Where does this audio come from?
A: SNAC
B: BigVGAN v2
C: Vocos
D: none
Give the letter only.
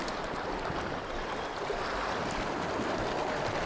D